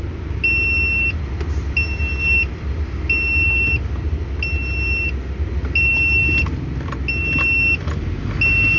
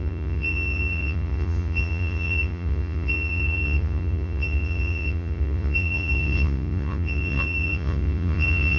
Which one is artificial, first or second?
second